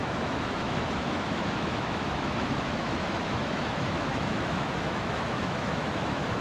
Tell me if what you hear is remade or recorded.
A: remade